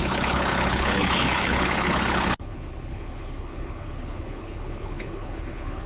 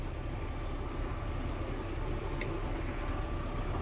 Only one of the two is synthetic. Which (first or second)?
first